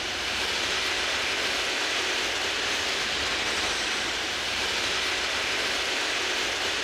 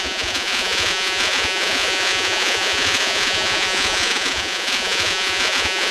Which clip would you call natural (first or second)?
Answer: first